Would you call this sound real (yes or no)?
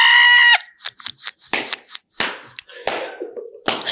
yes